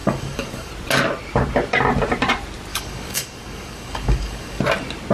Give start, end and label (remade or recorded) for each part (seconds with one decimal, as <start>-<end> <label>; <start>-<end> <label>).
0.0-0.7 remade; 0.7-2.7 recorded; 2.7-4.6 remade; 4.6-5.1 recorded